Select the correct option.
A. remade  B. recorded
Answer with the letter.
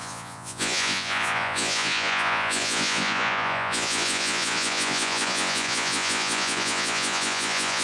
A